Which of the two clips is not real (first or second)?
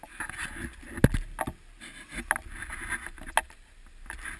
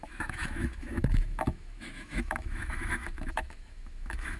second